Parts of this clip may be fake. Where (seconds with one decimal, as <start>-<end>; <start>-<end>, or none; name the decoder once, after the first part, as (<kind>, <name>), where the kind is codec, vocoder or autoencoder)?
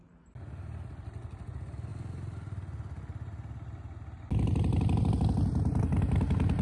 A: none